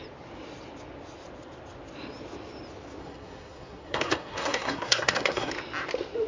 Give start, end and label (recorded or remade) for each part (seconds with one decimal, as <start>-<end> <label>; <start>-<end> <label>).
0.0-3.0 recorded; 3.0-5.5 remade; 5.5-6.3 recorded

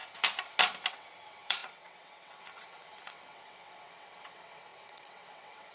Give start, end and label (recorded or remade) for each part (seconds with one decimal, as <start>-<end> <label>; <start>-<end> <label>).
0.0-0.9 recorded; 0.9-5.7 remade